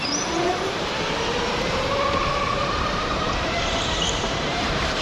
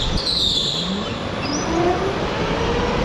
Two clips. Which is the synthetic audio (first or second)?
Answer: first